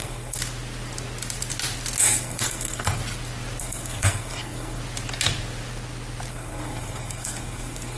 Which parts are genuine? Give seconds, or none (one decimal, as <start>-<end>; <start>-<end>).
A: 0.4-2.0; 3.0-3.6; 4.8-6.3